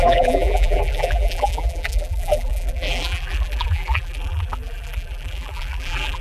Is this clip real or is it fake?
fake